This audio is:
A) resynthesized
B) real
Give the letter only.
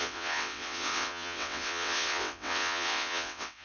A